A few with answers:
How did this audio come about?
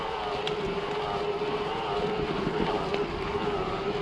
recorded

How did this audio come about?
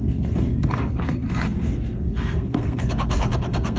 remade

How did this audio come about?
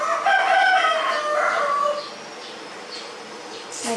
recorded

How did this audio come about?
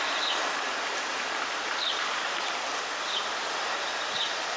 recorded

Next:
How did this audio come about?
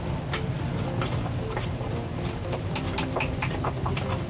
recorded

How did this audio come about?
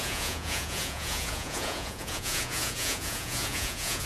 remade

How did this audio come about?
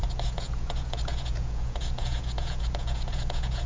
remade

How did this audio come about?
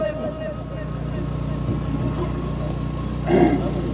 recorded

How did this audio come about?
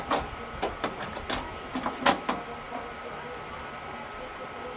recorded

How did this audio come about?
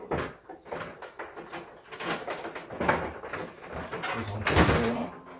recorded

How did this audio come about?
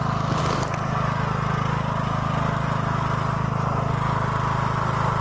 recorded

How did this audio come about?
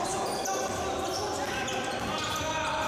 recorded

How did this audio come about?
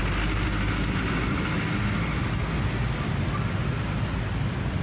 recorded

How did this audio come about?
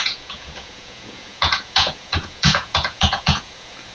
remade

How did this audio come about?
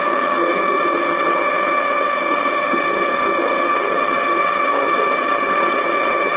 remade